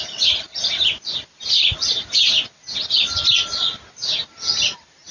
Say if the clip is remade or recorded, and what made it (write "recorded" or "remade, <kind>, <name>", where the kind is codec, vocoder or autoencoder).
recorded